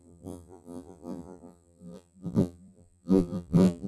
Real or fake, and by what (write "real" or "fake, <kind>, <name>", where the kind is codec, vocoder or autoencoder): fake, vocoder, BigVGAN v2